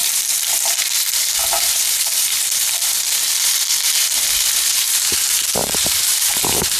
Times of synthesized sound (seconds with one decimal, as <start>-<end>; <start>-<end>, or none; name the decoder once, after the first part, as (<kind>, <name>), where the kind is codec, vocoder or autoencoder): 0.0-6.8 (vocoder, BigVGAN v2)